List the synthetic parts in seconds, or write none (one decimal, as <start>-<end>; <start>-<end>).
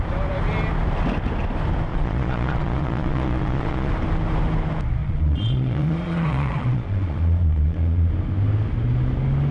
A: 1.9-3.9; 5.0-8.1